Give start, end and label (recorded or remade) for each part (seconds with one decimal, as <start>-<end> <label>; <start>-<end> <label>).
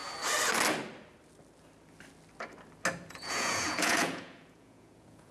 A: 0.0-3.1 recorded; 3.1-5.3 remade